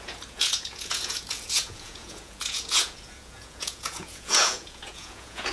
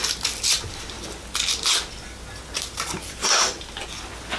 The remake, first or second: first